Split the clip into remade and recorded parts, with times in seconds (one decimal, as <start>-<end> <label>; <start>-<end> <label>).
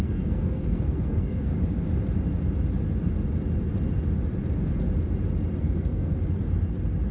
0.0-1.5 remade; 1.5-5.6 recorded; 5.6-6.1 remade; 6.1-7.1 recorded